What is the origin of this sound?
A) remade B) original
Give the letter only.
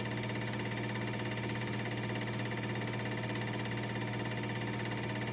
B